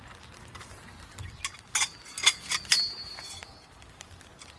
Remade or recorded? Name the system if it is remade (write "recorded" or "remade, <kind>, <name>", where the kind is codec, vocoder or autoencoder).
recorded